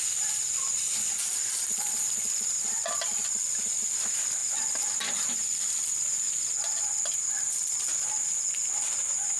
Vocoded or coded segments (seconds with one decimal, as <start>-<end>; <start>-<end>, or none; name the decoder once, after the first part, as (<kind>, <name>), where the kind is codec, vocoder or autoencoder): none